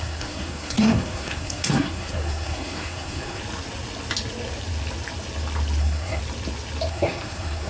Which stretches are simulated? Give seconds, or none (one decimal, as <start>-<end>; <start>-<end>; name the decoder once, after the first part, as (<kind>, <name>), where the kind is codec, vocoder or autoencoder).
0.0-3.4 (codec, SNAC); 5.8-6.2; 6.9-7.7